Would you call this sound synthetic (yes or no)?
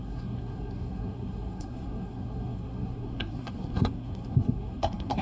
yes